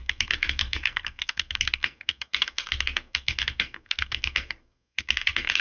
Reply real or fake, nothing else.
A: fake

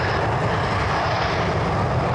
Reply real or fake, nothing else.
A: real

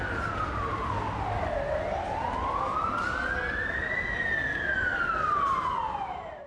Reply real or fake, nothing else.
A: real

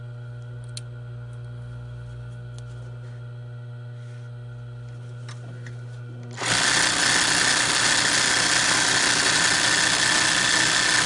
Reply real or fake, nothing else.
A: real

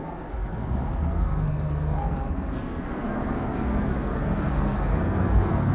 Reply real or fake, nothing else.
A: fake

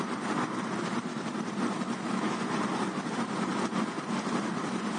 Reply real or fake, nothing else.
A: real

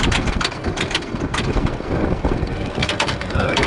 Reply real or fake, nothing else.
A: fake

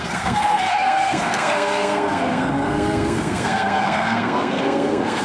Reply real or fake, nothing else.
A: fake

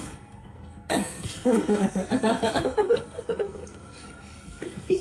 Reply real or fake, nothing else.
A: fake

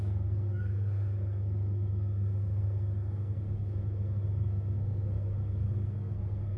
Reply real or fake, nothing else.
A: fake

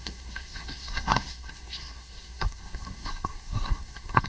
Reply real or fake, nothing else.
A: fake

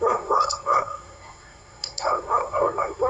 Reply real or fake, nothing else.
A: fake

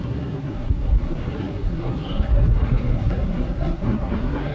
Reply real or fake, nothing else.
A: fake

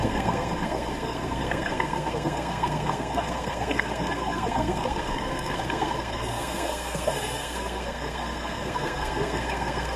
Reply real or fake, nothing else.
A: fake